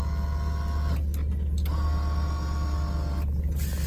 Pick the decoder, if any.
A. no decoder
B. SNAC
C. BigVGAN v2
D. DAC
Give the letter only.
A